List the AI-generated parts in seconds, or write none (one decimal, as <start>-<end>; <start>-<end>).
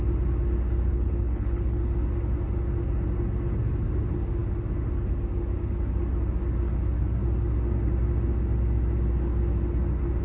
0.9-1.9